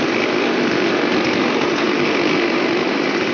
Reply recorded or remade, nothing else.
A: recorded